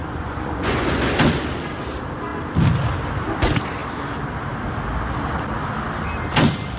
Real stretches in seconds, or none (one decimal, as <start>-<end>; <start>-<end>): 1.1-6.8